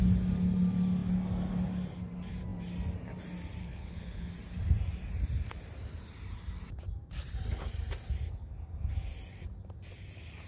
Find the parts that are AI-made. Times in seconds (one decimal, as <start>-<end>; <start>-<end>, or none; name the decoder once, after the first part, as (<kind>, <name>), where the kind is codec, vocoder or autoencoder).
3.6-4.3 (codec, HILCodec)